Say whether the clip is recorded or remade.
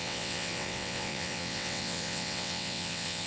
remade